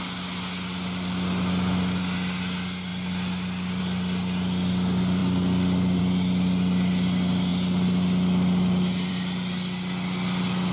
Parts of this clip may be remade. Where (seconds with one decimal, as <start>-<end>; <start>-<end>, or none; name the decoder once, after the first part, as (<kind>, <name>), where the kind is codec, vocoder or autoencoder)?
none